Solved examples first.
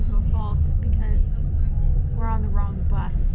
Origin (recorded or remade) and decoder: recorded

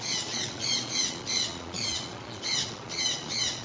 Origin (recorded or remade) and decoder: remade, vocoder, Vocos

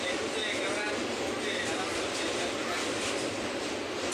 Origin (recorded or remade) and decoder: recorded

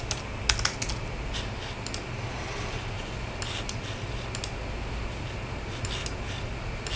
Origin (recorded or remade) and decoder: recorded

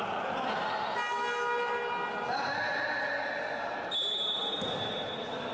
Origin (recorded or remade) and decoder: recorded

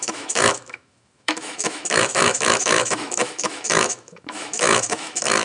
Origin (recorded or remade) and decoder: remade, autoencoder, DAC-VAE